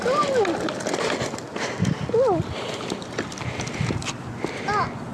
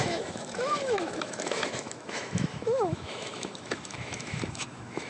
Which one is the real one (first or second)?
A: first